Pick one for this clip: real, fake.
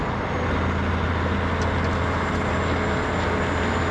real